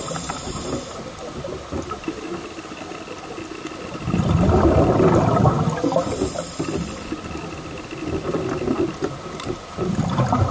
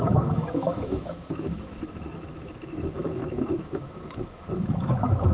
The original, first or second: first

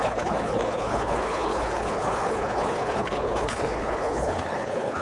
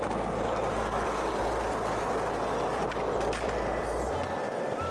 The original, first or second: second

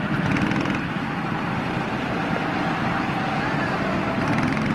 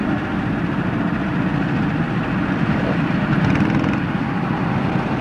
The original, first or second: second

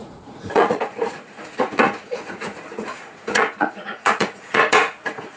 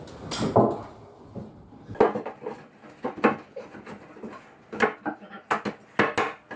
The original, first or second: second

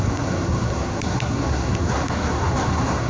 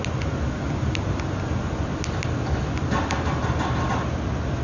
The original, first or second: second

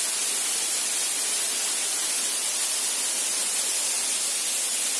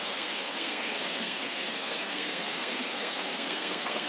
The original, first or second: first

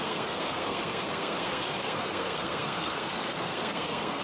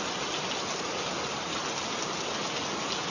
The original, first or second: second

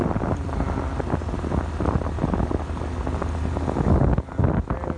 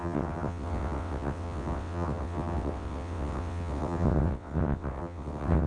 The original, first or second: first